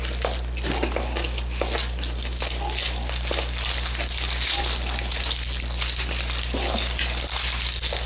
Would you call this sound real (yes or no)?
yes